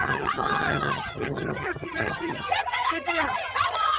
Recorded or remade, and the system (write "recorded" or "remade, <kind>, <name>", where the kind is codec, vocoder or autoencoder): remade, vocoder, HiFi-GAN